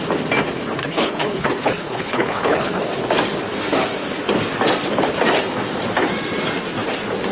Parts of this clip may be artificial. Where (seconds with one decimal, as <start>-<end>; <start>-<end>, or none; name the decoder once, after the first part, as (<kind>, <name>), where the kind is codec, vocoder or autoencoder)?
0.8-2.8 (codec, HILCodec)